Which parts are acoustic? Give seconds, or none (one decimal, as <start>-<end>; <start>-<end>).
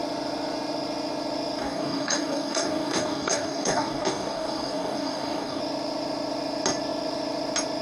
0.0-1.6; 5.6-7.8